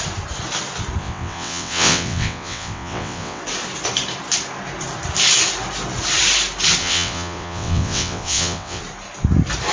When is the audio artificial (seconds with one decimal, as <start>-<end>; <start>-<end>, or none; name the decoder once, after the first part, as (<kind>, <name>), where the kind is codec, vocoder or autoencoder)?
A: 1.0-3.4 (vocoder, WaveNeXt); 6.8-8.8